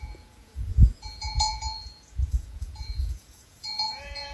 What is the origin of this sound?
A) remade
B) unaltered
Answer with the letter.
A